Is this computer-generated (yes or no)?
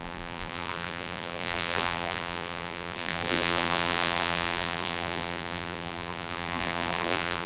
yes